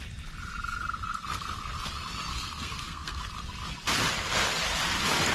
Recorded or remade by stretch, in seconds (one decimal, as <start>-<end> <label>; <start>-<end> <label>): 0.0-2.3 recorded; 2.3-3.2 remade; 3.2-5.3 recorded